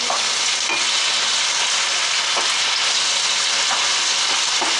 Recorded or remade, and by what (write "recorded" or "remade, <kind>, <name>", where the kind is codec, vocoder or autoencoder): recorded